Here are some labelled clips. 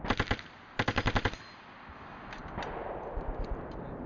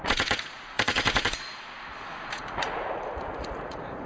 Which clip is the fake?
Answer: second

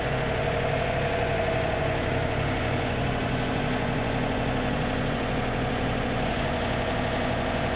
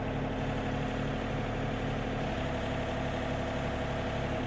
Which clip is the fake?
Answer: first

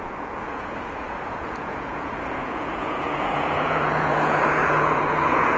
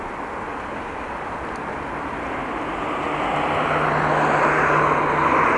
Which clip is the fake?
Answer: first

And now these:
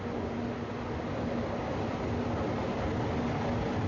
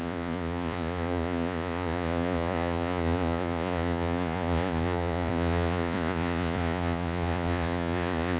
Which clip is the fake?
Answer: second